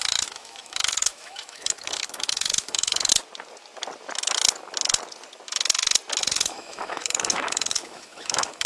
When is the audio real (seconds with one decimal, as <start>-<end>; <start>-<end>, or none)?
3.1-6.2